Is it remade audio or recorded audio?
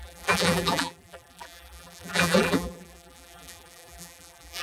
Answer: remade